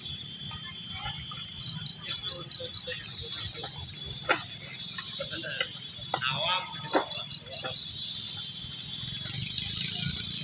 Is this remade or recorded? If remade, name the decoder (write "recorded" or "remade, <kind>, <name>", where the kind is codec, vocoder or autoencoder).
recorded